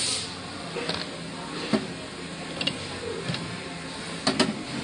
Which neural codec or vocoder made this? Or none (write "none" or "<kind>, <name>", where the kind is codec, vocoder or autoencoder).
none